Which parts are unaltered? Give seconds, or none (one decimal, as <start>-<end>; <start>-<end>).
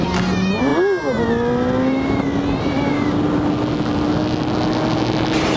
0.0-5.6